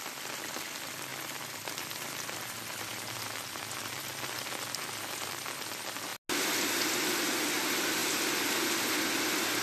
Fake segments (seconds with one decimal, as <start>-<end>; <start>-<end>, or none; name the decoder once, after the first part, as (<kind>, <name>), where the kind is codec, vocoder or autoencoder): 8.0-8.9 (vocoder, BigVGAN v2)